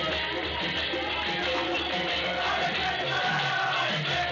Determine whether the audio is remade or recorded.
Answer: recorded